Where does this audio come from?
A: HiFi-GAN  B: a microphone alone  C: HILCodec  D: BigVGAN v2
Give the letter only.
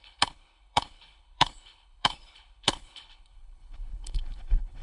C